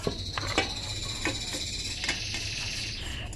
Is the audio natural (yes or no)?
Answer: yes